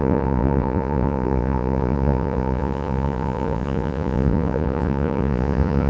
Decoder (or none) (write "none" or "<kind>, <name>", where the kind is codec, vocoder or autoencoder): vocoder, Vocos